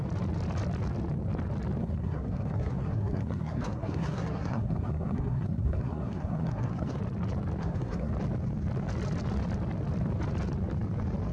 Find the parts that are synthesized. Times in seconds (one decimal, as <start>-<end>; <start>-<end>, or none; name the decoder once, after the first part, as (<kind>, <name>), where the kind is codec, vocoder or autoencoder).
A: 1.8-7.0 (codec, SNAC); 7.6-8.1